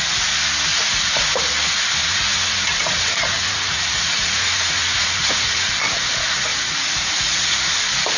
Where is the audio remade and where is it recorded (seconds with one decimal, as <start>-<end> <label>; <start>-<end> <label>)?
0.0-0.7 recorded; 0.7-1.4 remade; 1.4-2.0 recorded; 2.0-5.7 remade; 5.7-6.5 recorded; 6.5-7.5 remade; 7.5-8.2 recorded